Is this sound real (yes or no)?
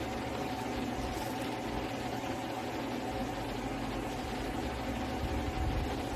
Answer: yes